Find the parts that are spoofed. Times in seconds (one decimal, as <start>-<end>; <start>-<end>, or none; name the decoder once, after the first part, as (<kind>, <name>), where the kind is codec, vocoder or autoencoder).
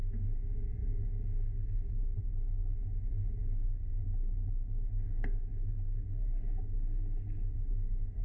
none